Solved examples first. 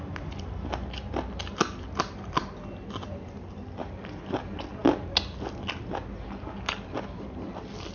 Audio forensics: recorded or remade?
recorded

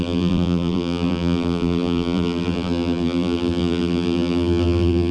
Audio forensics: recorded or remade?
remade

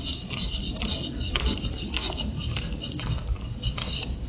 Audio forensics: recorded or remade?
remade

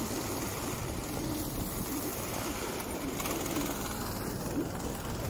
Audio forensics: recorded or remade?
remade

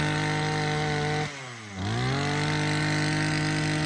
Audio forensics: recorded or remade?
recorded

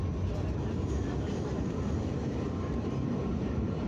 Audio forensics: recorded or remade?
remade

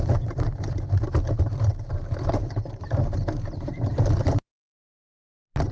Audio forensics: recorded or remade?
remade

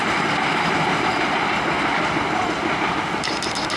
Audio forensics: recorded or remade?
recorded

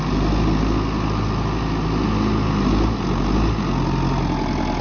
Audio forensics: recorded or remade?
recorded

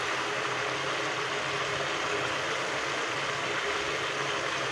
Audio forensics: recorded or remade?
recorded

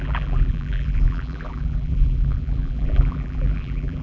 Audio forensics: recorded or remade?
remade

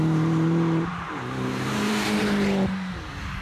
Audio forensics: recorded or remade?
remade